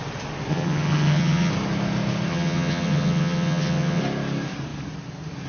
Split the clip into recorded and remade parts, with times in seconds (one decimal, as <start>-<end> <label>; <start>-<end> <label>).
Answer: 0.0-0.5 recorded; 0.5-1.5 remade; 1.5-2.3 recorded; 2.3-4.0 remade; 4.0-5.5 recorded